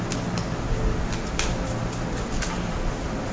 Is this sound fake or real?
real